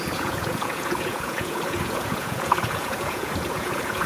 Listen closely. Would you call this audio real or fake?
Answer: fake